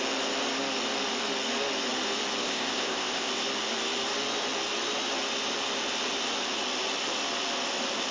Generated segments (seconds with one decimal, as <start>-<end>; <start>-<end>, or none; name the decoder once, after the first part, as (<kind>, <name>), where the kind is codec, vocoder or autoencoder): 2.4-3.3 (codec, ZipCodec)